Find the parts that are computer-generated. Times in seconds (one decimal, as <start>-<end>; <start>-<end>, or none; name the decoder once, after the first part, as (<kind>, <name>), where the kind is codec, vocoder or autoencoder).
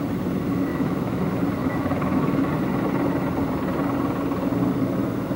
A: 0.7-1.2 (autoencoder, DAC-VAE); 1.6-2.5